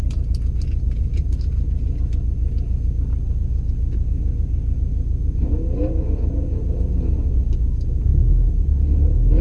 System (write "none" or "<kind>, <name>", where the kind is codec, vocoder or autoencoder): none